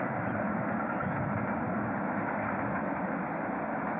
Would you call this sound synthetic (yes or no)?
no